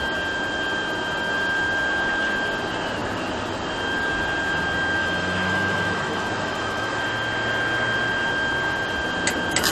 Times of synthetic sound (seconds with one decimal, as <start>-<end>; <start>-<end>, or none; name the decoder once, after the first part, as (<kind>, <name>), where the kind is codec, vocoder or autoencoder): 5.0-7.0 (autoencoder, DAC-VAE)